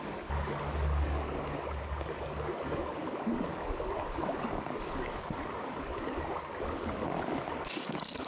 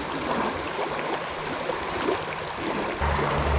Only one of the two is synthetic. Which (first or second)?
first